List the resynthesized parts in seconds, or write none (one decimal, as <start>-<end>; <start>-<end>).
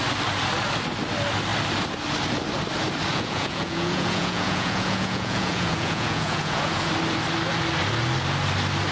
3.1-6.9